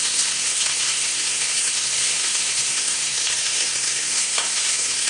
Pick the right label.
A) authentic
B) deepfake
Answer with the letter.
B